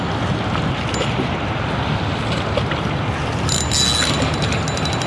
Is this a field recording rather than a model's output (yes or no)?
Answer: yes